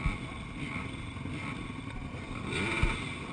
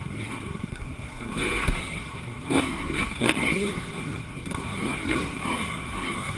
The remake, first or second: second